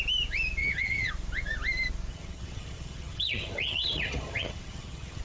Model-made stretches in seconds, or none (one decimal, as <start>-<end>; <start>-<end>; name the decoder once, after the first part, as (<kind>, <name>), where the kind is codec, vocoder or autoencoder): 0.6-1.1 (vocoder, HiFi-GAN); 2.1-5.2